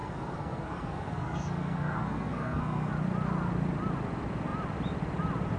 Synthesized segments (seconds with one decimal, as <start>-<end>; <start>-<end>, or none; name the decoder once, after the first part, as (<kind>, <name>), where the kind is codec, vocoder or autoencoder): 0.0-2.9 (codec, SNAC)